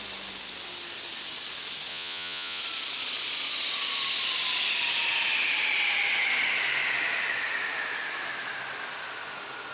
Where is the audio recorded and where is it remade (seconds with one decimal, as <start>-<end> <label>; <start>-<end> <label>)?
0.0-1.9 recorded; 1.9-2.6 remade; 2.6-9.7 recorded